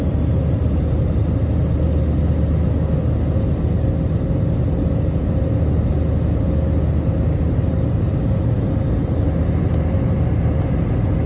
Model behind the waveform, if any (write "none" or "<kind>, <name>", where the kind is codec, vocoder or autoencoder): none